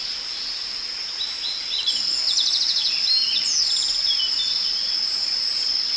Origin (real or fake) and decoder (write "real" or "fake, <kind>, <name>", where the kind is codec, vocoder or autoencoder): real